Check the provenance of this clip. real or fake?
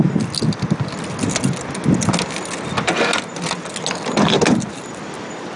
real